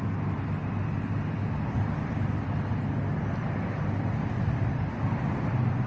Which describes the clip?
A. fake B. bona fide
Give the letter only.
B